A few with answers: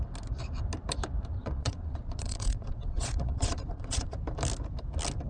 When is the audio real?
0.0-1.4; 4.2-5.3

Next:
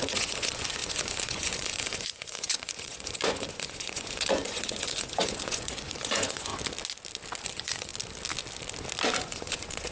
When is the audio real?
6.5-7.4; 7.9-9.1

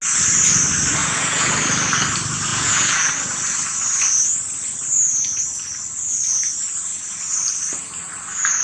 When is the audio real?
0.0-1.0; 1.5-2.5; 3.1-8.6

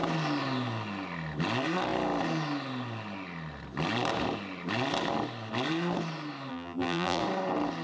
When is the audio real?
0.0-6.5; 7.2-7.8

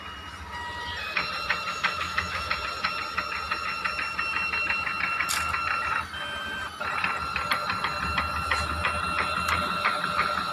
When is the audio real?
0.0-1.7; 2.5-10.5

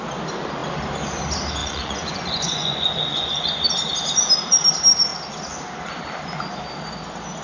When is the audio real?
0.0-1.6; 3.6-7.4